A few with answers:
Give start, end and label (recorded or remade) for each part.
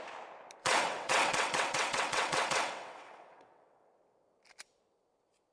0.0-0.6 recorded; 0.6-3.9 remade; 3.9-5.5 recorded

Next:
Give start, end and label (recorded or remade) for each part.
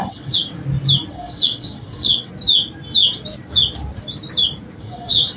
0.0-0.5 remade; 0.5-1.1 recorded; 1.1-2.3 remade; 2.3-4.8 recorded; 4.8-5.4 remade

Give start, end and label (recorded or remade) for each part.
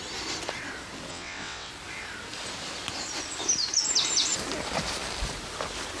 0.0-1.1 recorded; 1.1-1.7 remade; 1.7-6.0 recorded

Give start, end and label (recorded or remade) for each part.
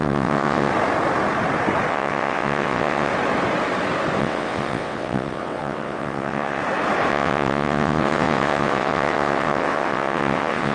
0.0-0.7 remade; 0.7-1.9 recorded; 1.9-3.1 remade; 3.1-4.2 recorded; 4.2-6.6 remade; 6.6-7.1 recorded; 7.1-10.7 remade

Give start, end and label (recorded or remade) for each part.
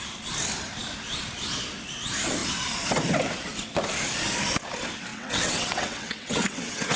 0.0-5.1 recorded; 5.1-7.0 remade